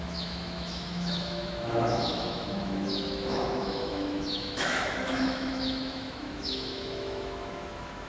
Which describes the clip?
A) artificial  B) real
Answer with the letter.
A